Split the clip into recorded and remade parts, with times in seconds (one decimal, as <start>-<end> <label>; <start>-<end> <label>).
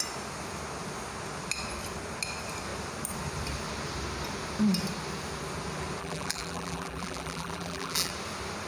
0.0-6.0 recorded; 6.0-8.1 remade; 8.1-8.7 recorded